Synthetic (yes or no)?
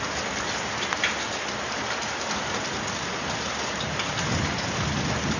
no